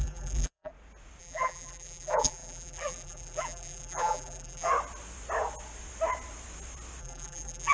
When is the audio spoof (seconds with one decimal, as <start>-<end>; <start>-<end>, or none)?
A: 0.0-0.7; 1.2-4.7; 7.0-7.7